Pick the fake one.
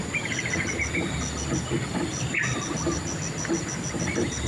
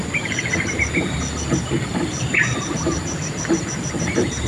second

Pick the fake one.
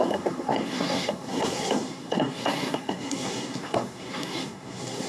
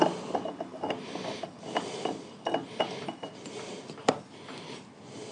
first